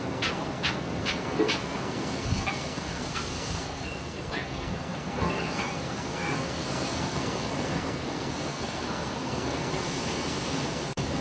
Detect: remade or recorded remade